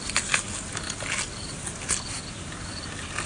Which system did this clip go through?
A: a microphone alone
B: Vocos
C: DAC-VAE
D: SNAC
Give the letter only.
A